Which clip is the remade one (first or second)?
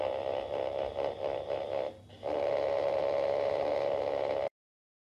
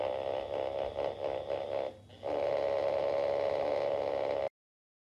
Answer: first